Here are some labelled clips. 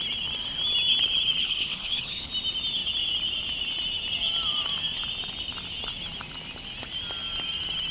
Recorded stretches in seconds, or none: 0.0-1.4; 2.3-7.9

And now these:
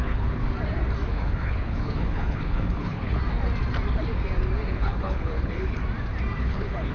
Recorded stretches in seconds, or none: 0.4-1.1; 3.2-4.7; 5.8-6.4

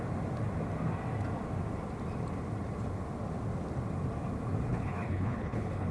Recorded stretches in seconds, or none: 0.0-4.7

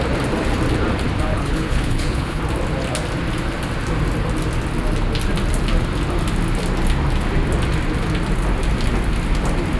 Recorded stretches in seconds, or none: 0.0-1.3; 2.4-9.8

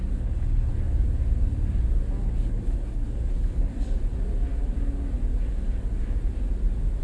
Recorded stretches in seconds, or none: 0.7-2.2; 3.7-7.0

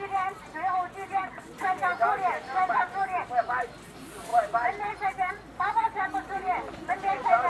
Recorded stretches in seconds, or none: 0.0-7.5

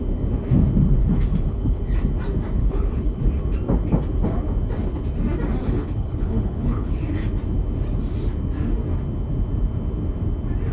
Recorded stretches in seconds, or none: 0.0-1.0; 1.8-2.6; 3.2-5.6; 7.0-10.7

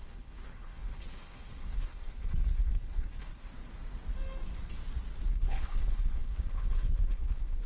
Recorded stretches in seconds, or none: 3.5-5.3